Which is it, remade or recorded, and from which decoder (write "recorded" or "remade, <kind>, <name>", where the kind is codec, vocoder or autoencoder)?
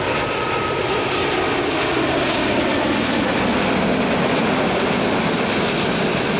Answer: recorded